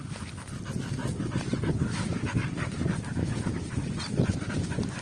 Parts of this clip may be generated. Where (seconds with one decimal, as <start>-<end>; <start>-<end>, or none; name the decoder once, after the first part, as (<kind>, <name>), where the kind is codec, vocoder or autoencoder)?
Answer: 1.0-2.7 (vocoder, BigVGAN v2); 3.5-4.6